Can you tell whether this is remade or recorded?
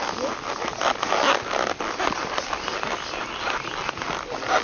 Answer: recorded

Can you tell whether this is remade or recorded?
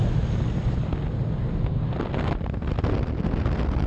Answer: recorded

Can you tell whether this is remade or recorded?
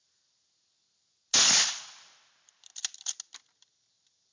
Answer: recorded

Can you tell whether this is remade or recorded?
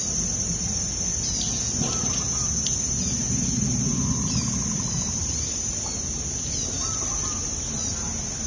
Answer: recorded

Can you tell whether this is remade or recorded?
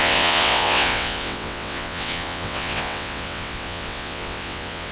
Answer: remade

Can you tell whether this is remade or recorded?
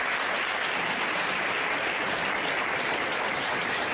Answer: recorded